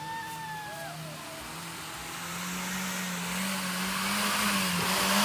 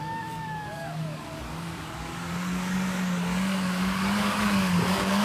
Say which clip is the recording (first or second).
first